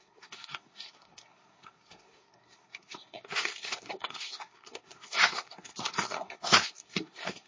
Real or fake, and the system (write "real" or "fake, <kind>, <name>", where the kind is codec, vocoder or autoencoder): fake, codec, SNAC